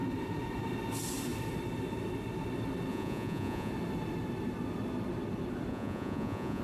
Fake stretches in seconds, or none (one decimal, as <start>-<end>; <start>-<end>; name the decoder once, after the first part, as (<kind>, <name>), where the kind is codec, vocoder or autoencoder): 2.9-3.7 (vocoder, Vocos); 5.7-6.6